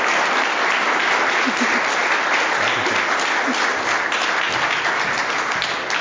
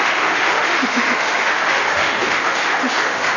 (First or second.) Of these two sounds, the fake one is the second